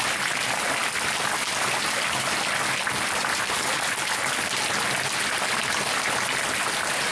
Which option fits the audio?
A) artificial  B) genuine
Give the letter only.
B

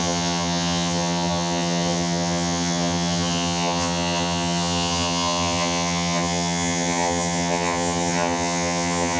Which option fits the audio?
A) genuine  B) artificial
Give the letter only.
B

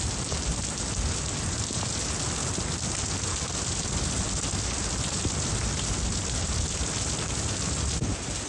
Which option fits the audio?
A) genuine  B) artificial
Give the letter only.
A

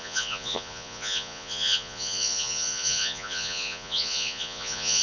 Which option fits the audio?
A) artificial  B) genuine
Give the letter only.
A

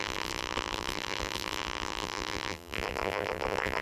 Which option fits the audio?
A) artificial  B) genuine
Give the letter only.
A